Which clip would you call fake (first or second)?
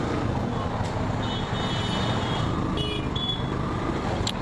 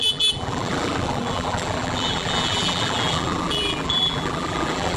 second